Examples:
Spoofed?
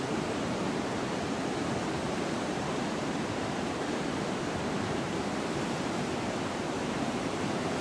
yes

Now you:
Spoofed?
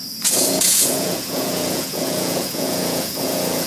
yes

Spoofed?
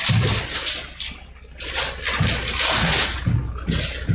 no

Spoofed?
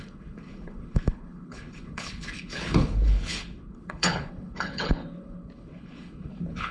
yes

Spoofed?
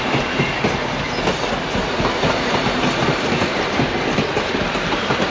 no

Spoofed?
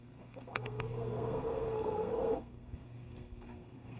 yes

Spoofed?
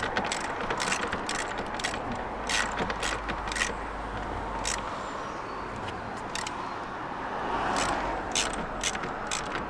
no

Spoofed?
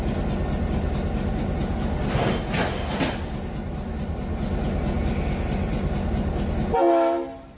no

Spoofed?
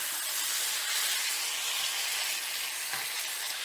no